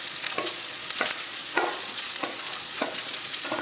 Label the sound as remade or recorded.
remade